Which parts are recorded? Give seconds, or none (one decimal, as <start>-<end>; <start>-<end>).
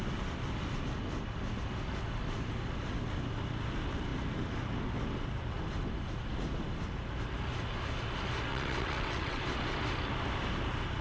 0.0-8.5; 9.4-11.0